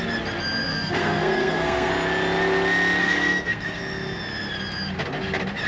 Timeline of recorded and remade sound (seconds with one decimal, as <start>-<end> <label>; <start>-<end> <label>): 0.0-0.7 recorded; 0.7-1.9 remade; 1.9-3.0 recorded; 3.0-3.8 remade; 3.8-5.7 recorded